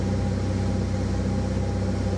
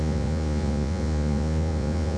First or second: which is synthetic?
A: second